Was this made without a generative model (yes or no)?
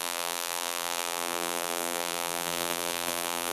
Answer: no